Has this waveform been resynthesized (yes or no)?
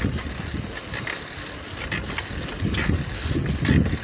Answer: no